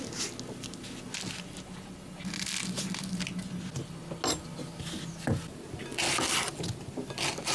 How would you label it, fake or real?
real